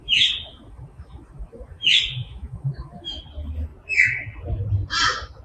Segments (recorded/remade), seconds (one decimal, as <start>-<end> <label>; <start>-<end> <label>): 0.0-3.2 remade; 3.2-5.4 recorded